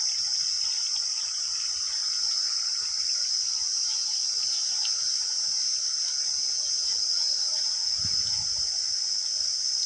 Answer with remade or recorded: recorded